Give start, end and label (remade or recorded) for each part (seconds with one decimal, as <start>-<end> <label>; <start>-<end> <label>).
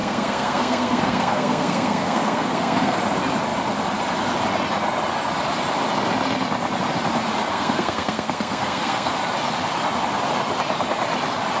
0.0-3.0 remade; 3.0-7.5 recorded; 7.5-9.1 remade; 9.1-11.6 recorded